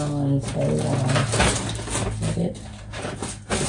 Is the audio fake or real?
real